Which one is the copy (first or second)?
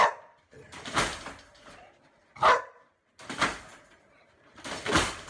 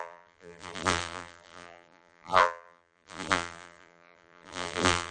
second